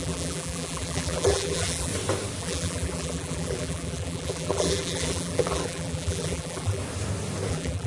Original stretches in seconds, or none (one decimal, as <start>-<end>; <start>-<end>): 1.9-2.4; 6.8-7.5